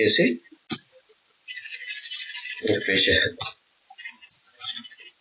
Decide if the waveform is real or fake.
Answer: real